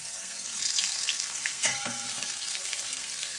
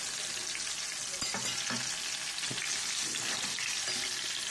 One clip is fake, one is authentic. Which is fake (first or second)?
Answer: first